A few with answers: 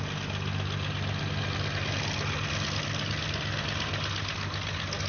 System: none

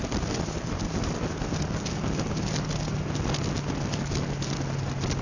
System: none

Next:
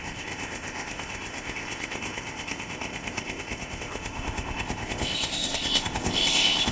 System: codec, ZipCodec